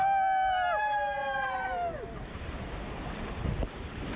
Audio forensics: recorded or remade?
recorded